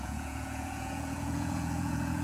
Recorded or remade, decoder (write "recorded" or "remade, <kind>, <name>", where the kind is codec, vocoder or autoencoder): remade, vocoder, Vocos